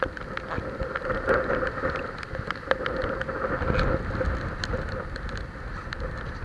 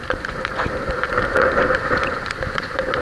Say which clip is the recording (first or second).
first